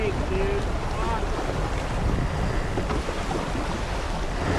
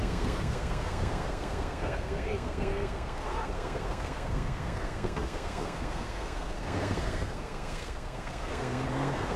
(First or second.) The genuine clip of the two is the first